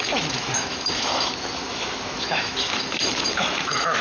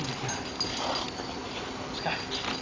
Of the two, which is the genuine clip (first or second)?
second